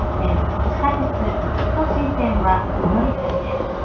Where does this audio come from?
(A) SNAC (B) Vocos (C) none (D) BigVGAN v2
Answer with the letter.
C